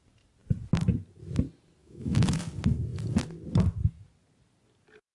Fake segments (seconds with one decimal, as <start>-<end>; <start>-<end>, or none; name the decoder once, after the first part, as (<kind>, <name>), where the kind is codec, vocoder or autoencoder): 1.8-2.4 (autoencoder, DAC-VAE)